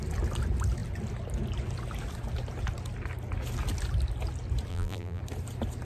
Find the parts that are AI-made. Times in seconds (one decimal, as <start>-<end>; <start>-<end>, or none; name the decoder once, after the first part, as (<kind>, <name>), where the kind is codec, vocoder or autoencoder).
4.7-5.2 (vocoder, BigVGAN v2)